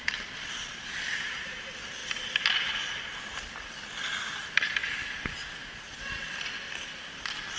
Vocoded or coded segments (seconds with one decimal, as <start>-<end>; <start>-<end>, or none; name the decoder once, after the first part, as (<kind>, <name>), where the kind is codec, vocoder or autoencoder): none